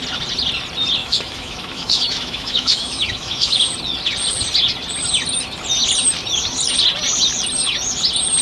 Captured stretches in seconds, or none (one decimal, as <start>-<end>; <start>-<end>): 0.0-1.0; 3.7-8.4